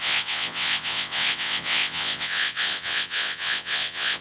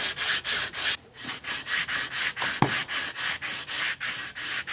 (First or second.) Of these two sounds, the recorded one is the second